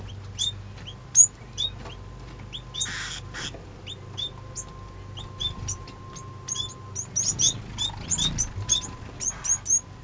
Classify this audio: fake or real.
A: real